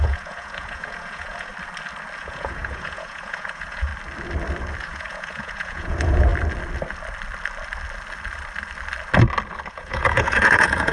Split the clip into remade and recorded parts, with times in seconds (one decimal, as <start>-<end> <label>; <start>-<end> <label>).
0.0-1.5 remade; 1.5-2.2 recorded; 2.2-3.9 remade; 3.9-4.8 recorded; 4.8-6.3 remade; 6.3-9.7 recorded; 9.7-10.9 remade